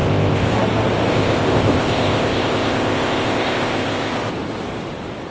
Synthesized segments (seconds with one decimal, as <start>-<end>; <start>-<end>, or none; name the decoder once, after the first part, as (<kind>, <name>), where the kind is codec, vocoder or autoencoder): 0.0-0.5 (codec, ZipCodec); 1.1-4.3